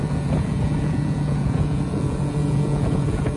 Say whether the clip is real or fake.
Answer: fake